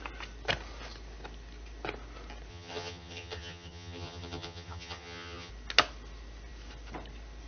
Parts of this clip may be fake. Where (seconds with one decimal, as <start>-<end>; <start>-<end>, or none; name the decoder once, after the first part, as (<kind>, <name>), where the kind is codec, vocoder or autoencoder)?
2.5-5.5 (vocoder, HiFi-GAN)